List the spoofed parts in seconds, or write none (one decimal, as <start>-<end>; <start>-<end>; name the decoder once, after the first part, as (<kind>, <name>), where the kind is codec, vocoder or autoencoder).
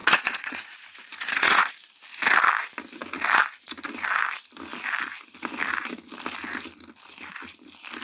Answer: 0.0-1.7 (vocoder, Vocos)